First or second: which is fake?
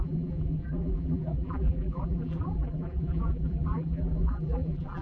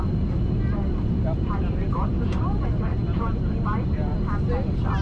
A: first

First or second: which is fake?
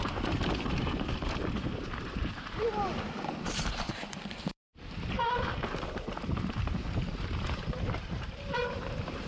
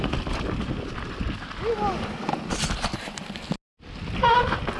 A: first